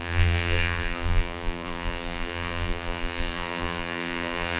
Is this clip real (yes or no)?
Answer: no